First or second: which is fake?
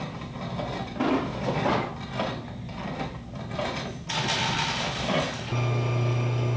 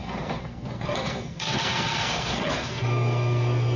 second